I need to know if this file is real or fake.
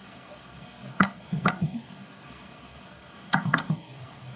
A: fake